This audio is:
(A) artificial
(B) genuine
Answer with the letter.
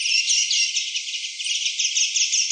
B